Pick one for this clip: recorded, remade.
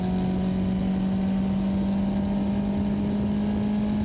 recorded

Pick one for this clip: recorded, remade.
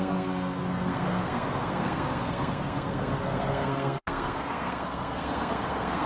remade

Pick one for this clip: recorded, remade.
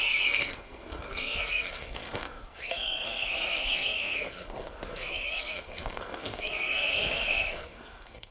remade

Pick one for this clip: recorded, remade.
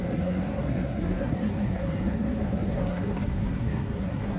remade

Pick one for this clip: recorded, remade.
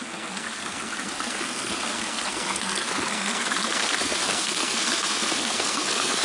remade